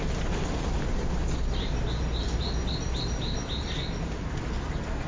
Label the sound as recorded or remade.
recorded